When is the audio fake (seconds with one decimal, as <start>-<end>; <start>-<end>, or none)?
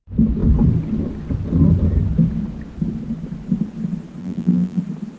4.2-4.8